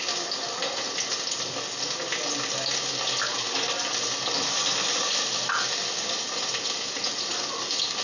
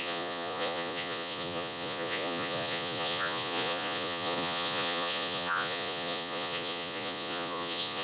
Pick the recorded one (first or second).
first